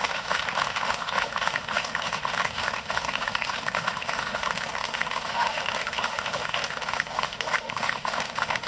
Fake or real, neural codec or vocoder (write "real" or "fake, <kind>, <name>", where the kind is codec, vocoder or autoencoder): fake, autoencoder, DAC-VAE